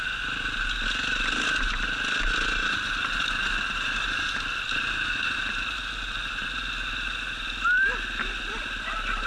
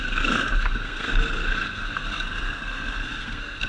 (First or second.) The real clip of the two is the first